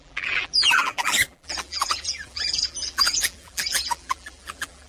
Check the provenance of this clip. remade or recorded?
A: remade